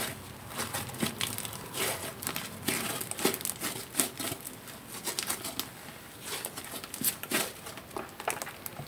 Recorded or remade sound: recorded